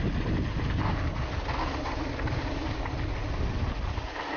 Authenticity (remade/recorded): recorded